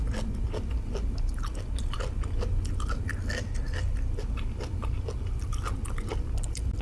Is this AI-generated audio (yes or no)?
no